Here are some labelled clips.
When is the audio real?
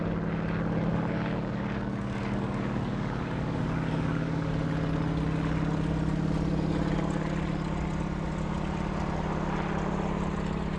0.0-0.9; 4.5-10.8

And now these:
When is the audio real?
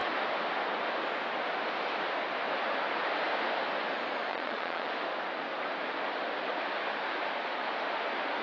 0.0-4.3; 4.9-8.4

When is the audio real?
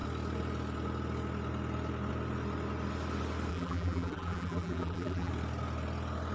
0.0-3.5; 5.3-6.3